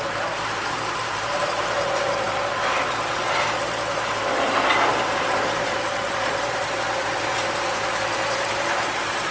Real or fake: fake